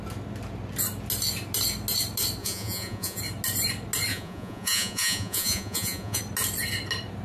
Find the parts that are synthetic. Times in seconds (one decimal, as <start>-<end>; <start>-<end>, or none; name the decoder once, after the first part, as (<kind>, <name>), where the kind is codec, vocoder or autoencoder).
2.4-3.2 (vocoder, Vocos); 4.1-6.2

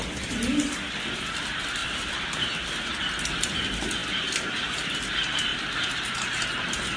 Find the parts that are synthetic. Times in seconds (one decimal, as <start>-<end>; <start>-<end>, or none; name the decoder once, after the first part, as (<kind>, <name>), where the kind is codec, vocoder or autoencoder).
none

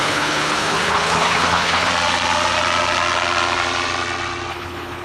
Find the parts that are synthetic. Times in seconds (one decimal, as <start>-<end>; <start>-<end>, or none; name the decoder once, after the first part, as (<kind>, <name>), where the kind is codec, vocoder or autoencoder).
0.0-1.9 (codec, HILCodec); 4.5-5.0

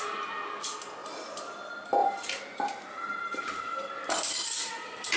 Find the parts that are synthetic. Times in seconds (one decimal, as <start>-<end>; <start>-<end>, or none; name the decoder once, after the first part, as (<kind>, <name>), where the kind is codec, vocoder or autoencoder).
2.0-5.2 (vocoder, BigVGAN v2)

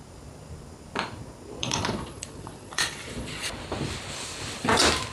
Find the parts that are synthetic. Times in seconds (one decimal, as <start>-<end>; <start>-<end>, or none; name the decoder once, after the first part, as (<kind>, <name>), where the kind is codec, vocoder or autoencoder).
1.6-3.5 (vocoder, Vocos)

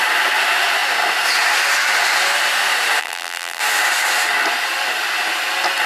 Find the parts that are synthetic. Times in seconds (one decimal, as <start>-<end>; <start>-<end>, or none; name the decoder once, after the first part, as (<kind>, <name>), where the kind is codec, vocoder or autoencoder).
3.0-3.6 (vocoder, BigVGAN v2)